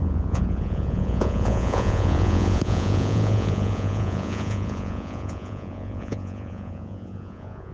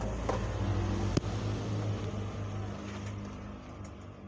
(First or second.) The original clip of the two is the second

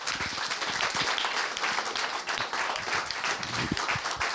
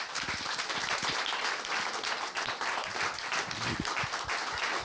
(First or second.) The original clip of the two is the second